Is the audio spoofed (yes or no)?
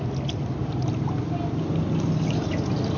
no